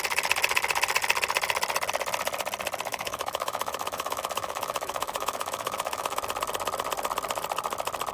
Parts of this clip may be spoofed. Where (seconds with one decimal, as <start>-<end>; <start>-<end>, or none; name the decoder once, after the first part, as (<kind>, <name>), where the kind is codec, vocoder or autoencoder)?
2.9-6.2 (autoencoder, DAC-VAE)